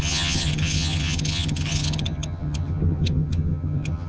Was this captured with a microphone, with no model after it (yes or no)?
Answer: no